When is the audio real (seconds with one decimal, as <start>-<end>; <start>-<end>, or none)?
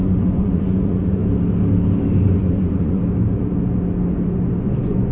1.2-2.4; 3.0-4.6